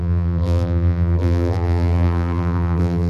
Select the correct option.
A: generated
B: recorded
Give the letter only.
A